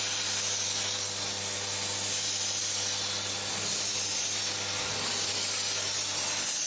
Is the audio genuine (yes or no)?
yes